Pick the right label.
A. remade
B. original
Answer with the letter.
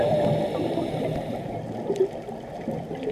B